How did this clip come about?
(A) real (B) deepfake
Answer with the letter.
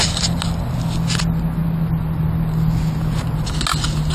A